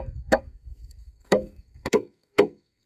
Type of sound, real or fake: fake